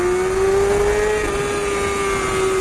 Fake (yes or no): no